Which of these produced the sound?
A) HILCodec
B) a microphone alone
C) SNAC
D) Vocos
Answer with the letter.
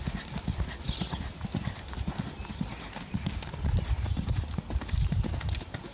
B